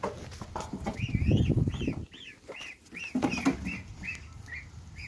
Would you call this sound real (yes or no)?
yes